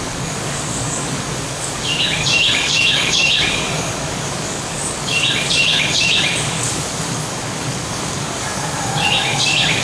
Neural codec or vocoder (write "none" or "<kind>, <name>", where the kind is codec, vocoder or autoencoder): codec, DAC